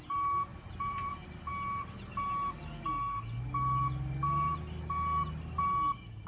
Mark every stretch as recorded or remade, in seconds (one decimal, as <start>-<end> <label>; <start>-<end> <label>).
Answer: 0.0-0.5 recorded; 0.5-1.1 remade; 1.1-6.3 recorded